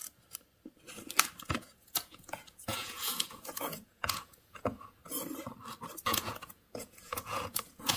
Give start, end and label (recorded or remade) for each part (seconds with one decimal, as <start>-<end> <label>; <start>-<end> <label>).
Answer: 0.0-1.5 recorded; 1.5-5.0 remade; 5.0-6.0 recorded; 6.0-8.0 remade